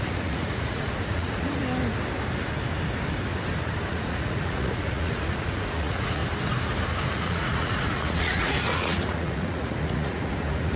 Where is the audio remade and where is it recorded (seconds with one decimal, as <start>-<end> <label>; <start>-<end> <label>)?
0.0-1.6 remade; 1.6-3.9 recorded; 3.9-6.2 remade; 6.2-7.1 recorded; 7.1-10.8 remade